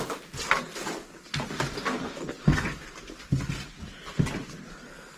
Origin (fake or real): real